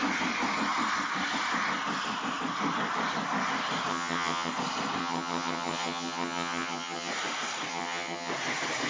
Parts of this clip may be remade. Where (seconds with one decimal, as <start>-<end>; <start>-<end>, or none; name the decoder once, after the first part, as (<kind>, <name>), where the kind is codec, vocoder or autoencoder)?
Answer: 3.9-4.5 (vocoder, HiFi-GAN); 5.0-7.1; 7.7-8.3